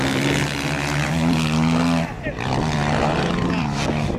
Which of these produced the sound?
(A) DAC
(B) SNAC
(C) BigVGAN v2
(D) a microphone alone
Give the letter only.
D